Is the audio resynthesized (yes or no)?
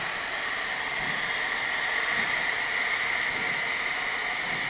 no